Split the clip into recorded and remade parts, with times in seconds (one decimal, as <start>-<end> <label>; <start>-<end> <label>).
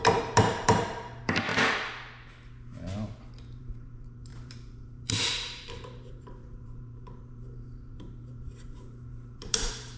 0.0-1.5 remade; 1.5-3.6 recorded; 3.6-10.0 remade